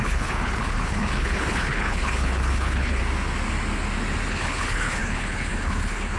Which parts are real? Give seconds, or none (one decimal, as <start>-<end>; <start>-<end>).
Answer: 3.0-4.3